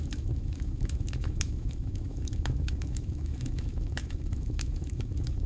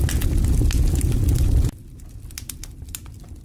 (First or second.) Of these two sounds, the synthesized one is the first